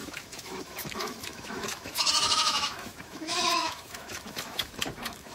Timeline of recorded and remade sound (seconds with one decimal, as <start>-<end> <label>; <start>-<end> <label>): 0.0-5.3 remade